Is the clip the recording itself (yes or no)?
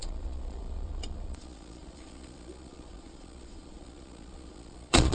no